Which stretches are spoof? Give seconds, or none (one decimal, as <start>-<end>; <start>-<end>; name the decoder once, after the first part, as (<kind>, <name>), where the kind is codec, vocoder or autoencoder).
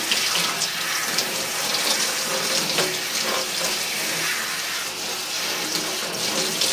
1.0-1.7 (vocoder, BigVGAN v2)